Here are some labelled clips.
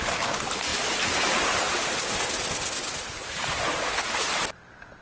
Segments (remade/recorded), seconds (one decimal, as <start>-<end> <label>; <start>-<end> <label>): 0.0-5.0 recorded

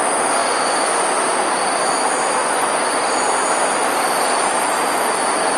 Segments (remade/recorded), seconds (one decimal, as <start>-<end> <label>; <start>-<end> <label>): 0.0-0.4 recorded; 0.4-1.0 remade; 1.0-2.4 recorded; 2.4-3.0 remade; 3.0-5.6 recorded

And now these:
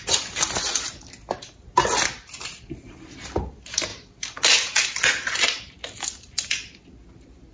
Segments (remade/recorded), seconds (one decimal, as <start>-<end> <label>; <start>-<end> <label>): 0.0-7.5 recorded

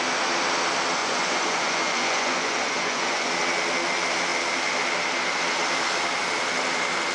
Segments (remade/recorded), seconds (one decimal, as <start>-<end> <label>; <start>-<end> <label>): 0.0-1.0 recorded; 1.0-3.3 remade; 3.3-7.1 recorded

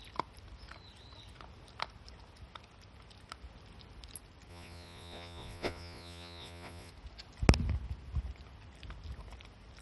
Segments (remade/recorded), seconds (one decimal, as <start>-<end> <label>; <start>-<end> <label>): 0.0-4.5 recorded; 4.5-6.9 remade; 6.9-9.8 recorded

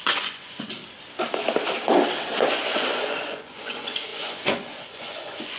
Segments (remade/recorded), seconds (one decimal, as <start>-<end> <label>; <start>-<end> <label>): 0.0-0.8 remade; 0.8-2.5 recorded; 2.5-5.6 remade